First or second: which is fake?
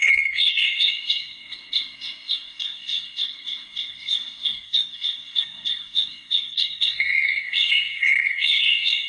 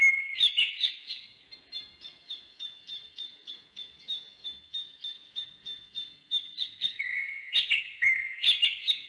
first